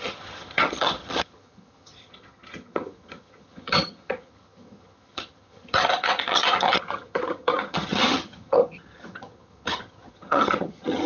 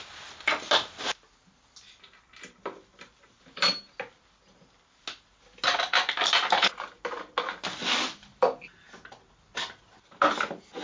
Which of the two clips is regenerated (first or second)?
first